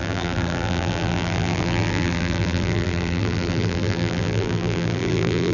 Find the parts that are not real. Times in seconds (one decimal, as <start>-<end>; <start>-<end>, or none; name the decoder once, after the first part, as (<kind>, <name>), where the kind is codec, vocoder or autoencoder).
0.0-5.5 (vocoder, BigVGAN v2)